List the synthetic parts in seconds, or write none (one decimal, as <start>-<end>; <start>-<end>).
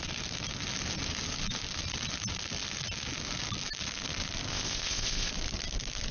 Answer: 4.5-5.3